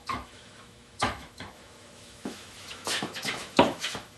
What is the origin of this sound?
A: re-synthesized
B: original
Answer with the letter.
A